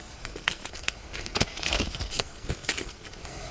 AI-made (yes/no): yes